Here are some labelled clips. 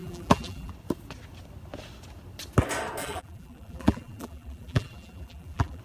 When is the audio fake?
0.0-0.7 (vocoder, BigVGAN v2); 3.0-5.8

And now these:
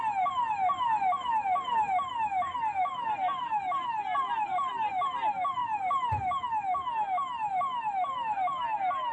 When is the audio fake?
none